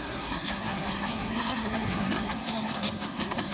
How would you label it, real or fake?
fake